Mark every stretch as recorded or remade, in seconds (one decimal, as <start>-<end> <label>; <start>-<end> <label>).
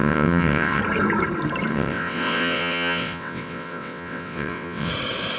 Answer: 0.0-0.8 remade; 0.8-1.7 recorded; 1.7-4.9 remade; 4.9-5.4 recorded